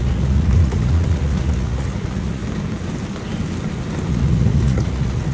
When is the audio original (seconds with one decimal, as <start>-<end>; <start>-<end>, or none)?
2.4-4.1